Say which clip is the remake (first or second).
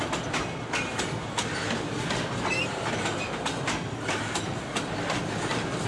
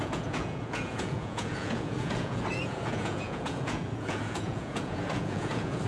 second